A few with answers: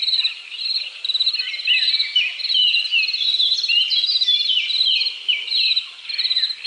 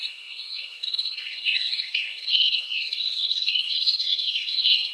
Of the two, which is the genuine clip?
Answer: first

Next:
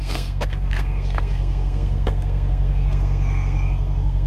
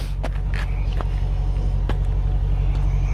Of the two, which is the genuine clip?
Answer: second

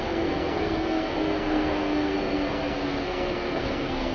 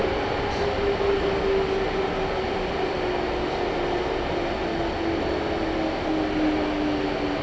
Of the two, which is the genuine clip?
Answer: second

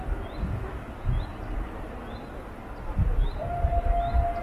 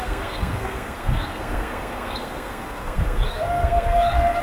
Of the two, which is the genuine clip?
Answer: first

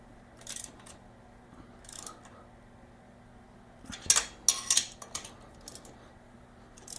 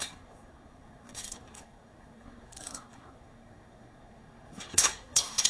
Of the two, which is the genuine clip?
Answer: first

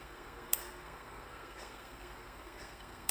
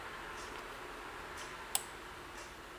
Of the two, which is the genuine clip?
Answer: second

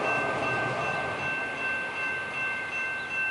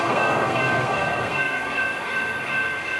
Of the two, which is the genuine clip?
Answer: first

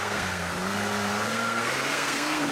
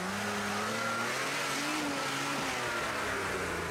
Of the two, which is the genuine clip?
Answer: second